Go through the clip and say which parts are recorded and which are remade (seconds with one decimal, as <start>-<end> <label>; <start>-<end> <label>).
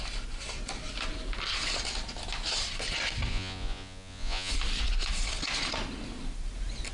0.0-3.3 recorded; 3.3-4.5 remade; 4.5-6.9 recorded